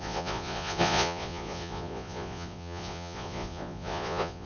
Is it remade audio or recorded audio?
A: remade